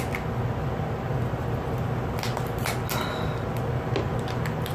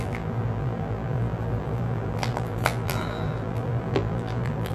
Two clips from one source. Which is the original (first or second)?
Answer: first